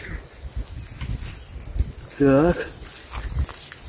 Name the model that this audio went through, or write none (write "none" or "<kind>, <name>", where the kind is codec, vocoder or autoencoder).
none